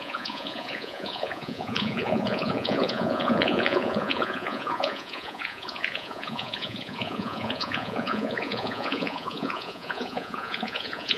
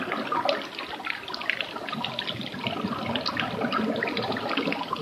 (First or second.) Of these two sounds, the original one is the second